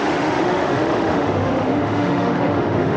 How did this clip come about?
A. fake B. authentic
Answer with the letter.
A